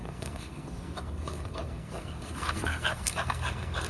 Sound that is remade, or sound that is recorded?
remade